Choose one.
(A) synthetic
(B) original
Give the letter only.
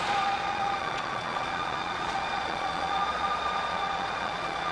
A